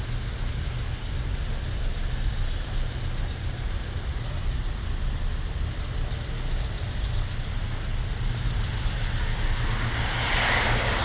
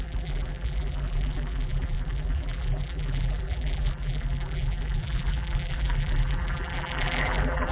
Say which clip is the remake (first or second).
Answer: second